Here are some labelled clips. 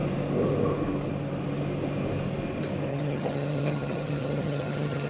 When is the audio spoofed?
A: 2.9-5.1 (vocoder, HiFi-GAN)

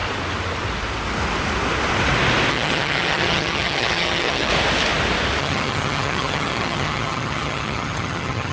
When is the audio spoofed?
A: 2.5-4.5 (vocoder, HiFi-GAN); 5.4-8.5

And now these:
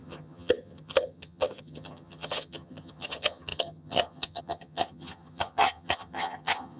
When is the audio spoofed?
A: 0.0-6.8 (vocoder, HiFi-GAN)

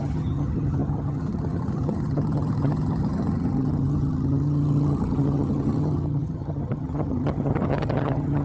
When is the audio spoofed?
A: 0.0-8.4 (vocoder, HiFi-GAN)